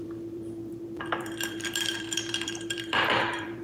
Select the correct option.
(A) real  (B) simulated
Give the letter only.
B